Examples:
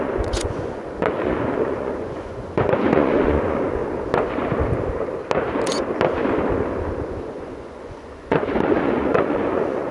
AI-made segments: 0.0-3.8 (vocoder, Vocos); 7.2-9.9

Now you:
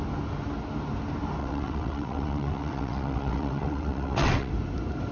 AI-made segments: 1.4-4.5 (vocoder, WaveNeXt)

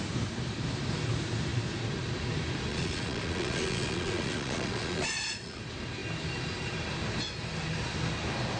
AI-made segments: 2.7-5.6 (vocoder, Vocos)